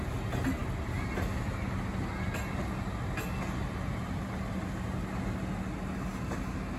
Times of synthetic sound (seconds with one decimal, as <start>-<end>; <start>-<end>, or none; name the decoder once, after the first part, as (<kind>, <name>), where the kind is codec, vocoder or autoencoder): none

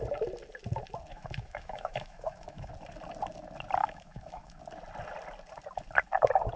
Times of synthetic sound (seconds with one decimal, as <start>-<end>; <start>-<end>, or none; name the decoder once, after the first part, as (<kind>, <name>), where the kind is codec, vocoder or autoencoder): 1.1-2.7 (autoencoder, DAC-VAE); 3.8-4.6

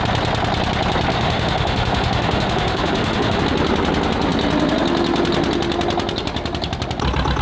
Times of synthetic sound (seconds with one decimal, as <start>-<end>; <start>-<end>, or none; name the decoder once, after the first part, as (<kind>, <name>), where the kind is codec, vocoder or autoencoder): 1.1-3.4 (autoencoder, DAC-VAE)

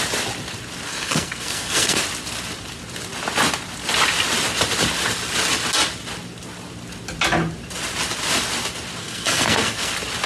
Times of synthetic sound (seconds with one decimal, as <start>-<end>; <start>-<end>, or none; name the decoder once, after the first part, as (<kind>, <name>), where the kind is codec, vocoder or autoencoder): 0.9-2.0 (codec, SNAC); 9.0-9.9